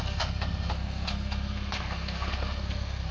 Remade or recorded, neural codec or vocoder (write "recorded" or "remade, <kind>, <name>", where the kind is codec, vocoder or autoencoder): remade, codec, SNAC